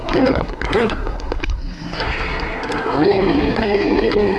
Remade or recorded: remade